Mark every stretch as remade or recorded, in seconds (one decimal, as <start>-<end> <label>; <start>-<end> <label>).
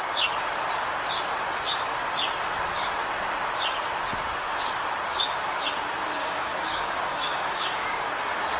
0.0-6.2 recorded; 6.2-8.1 remade; 8.1-8.6 recorded